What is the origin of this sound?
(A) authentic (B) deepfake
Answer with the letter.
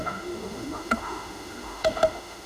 B